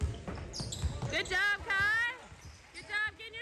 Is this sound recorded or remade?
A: recorded